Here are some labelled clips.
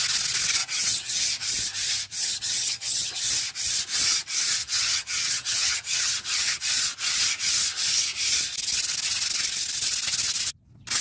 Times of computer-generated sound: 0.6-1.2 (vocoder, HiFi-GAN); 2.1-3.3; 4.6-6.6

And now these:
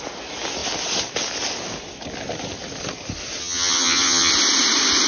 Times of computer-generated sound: 3.4-4.3 (vocoder, HiFi-GAN)

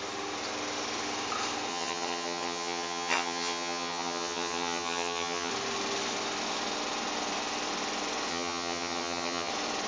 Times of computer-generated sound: 1.7-5.5 (vocoder, HiFi-GAN); 8.3-9.5

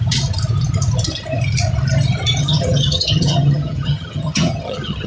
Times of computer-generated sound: 2.4-5.1 (vocoder, HiFi-GAN)

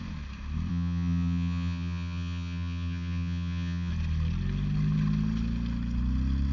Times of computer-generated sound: 0.7-3.9 (vocoder, HiFi-GAN)

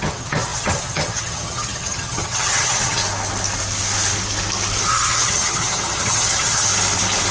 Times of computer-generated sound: 0.0-3.0 (vocoder, HiFi-GAN); 4.9-6.7

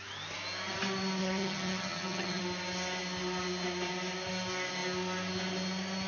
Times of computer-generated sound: 1.2-2.4 (vocoder, HiFi-GAN)